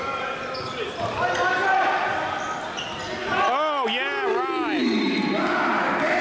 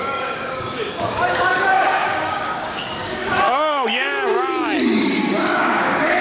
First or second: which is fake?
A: second